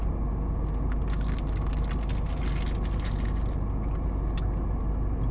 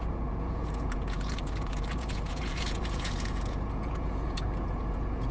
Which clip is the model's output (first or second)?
second